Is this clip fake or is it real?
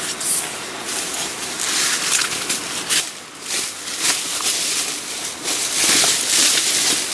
real